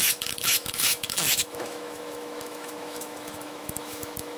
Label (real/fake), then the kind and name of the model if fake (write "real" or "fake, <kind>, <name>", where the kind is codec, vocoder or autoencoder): fake, autoencoder, DAC-VAE